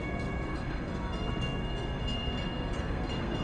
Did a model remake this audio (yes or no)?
yes